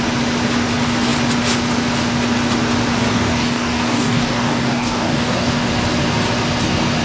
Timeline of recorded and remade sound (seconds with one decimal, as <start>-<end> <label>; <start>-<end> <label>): 0.0-3.1 recorded; 3.1-5.7 remade; 5.7-7.0 recorded